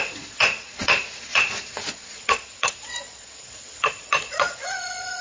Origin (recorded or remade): remade